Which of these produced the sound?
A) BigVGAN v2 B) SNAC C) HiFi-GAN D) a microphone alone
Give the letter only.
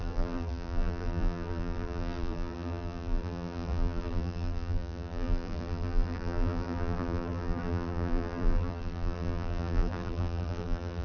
A